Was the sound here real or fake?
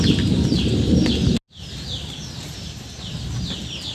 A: real